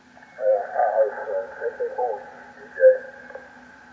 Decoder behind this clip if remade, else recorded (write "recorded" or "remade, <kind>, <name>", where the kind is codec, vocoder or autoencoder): recorded